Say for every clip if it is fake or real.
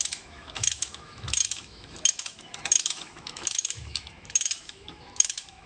fake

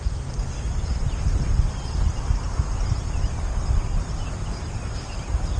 real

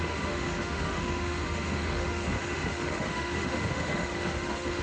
fake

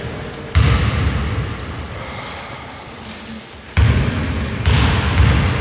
real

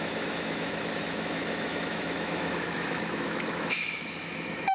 fake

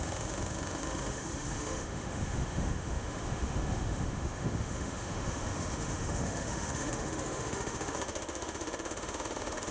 fake